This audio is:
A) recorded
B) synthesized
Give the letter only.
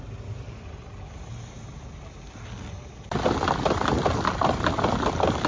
A